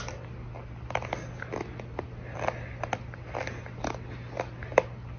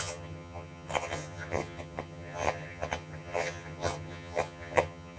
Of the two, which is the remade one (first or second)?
second